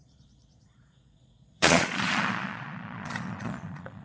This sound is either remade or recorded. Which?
remade